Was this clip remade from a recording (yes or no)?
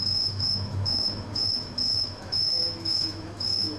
yes